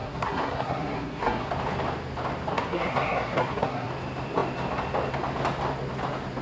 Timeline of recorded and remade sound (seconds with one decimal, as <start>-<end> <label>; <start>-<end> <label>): 0.0-1.5 remade; 1.5-2.5 recorded; 2.5-3.9 remade; 3.9-6.4 recorded